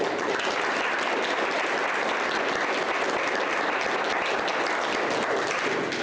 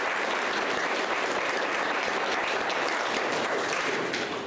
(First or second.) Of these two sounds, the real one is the first